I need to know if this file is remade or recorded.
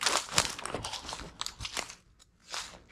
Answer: recorded